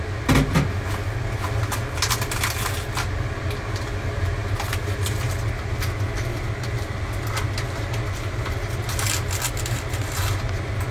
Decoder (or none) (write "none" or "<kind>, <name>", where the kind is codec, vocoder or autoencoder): none